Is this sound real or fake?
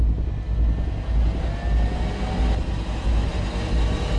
real